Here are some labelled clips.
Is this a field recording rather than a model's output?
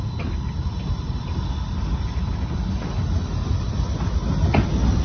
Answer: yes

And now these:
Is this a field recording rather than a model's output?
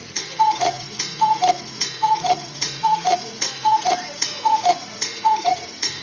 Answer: no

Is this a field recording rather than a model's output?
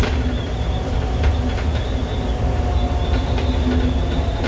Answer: yes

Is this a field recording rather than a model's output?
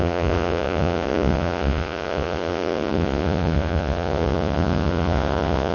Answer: no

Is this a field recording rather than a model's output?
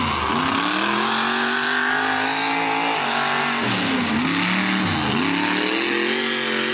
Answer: yes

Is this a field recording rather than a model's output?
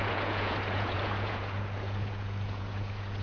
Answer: no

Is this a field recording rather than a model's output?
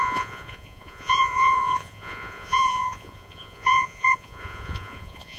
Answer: no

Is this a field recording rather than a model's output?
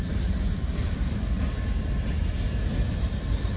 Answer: yes